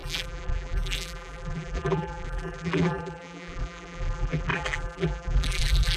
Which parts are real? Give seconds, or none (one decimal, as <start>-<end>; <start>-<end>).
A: none